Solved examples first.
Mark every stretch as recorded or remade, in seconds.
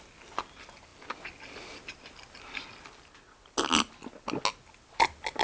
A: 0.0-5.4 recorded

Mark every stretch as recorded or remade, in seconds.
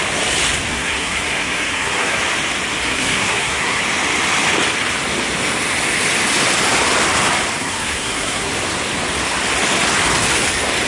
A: 0.0-0.7 recorded; 0.7-2.2 remade; 2.2-2.8 recorded; 2.8-3.8 remade; 3.8-7.6 recorded; 7.6-8.5 remade; 8.5-10.9 recorded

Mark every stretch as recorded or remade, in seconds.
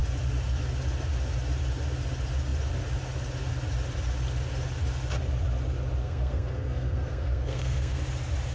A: 0.0-6.0 recorded; 6.0-8.0 remade; 8.0-8.5 recorded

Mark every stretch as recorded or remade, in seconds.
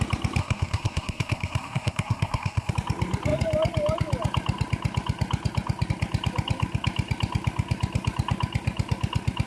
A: 0.0-0.4 recorded; 0.4-2.7 remade; 2.7-9.5 recorded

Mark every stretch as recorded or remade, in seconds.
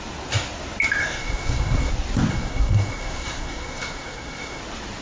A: 0.0-1.0 recorded; 1.0-1.9 remade; 1.9-2.3 recorded; 2.3-4.6 remade; 4.6-5.0 recorded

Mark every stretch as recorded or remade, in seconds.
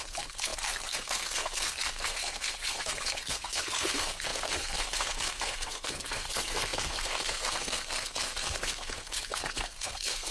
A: 0.0-10.3 remade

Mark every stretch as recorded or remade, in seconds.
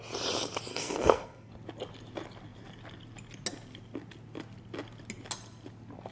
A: 0.0-0.7 recorded; 0.7-1.5 remade; 1.5-6.1 recorded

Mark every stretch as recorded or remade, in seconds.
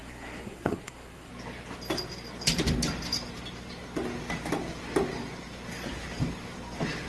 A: 0.0-1.3 remade; 1.3-7.1 recorded